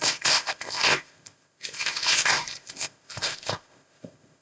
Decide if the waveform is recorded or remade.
remade